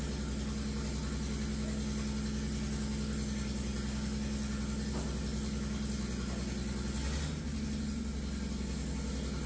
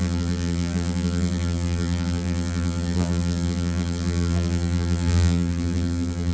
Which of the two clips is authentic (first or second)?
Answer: first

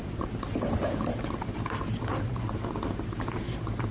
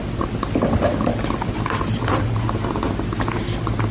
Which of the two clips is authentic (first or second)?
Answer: second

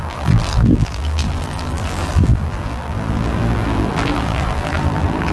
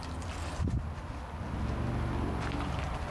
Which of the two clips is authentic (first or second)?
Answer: second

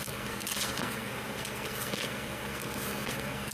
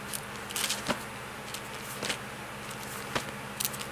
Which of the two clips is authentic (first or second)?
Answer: second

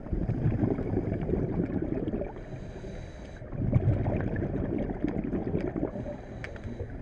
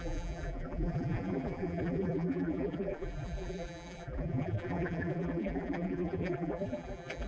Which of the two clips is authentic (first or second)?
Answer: first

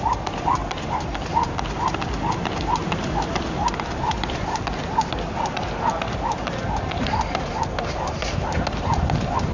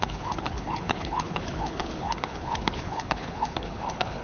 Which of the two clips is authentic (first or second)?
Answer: first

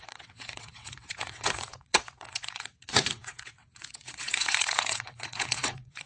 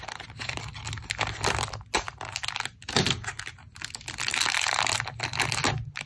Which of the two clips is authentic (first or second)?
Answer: second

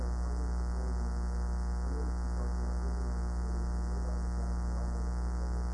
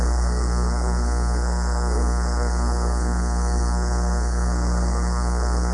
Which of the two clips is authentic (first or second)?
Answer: first